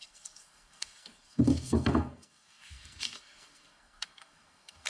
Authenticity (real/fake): fake